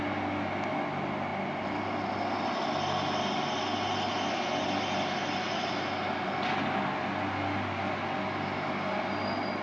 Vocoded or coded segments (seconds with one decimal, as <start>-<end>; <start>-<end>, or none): none